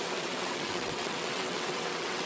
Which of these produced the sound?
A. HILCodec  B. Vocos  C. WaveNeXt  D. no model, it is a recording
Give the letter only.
C